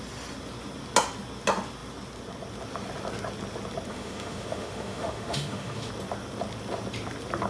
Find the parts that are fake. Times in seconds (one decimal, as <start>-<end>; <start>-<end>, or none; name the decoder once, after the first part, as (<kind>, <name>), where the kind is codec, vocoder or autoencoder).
3.9-5.9 (autoencoder, DAC-VAE)